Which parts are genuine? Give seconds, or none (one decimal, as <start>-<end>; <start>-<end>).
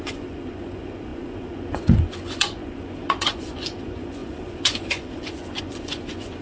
none